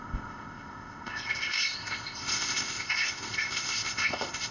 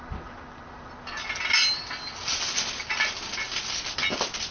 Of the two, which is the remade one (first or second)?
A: first